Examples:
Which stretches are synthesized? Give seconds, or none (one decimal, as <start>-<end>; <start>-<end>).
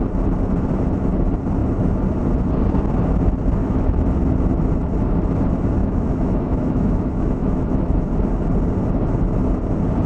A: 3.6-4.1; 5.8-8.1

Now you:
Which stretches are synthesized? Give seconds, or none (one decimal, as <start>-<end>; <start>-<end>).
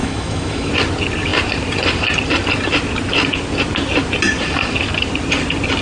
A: 0.0-0.7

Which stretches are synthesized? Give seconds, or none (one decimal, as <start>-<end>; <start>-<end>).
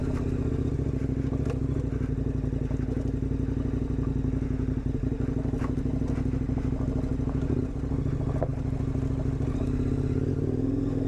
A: none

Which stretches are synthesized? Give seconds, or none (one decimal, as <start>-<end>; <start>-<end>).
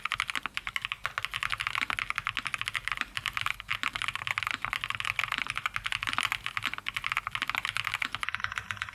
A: none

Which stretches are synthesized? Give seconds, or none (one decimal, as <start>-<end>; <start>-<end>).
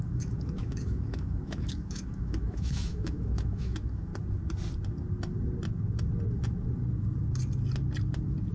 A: 0.0-4.1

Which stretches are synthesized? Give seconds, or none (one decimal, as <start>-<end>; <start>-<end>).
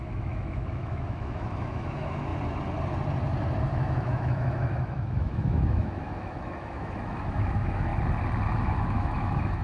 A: 0.0-2.3; 3.6-7.9; 8.6-9.6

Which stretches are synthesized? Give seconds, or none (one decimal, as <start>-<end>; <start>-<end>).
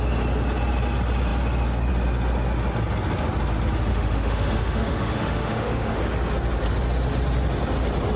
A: 3.9-6.0